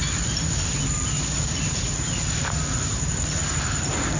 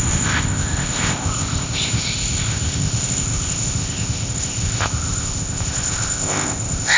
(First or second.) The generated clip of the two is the second